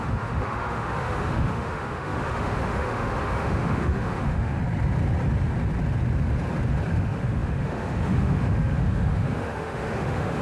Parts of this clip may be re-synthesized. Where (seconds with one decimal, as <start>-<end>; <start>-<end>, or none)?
0.0-4.6; 6.9-10.4